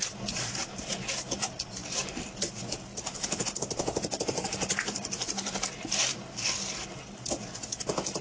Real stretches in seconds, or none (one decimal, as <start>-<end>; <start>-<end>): 0.0-1.8; 3.6-8.2